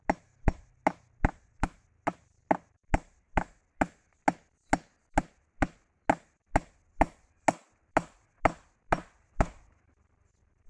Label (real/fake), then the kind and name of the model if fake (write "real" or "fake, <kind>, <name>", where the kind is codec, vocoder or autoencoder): real